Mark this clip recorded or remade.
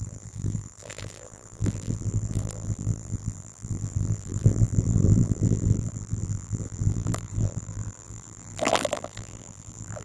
remade